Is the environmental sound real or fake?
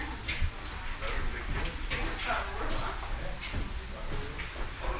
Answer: real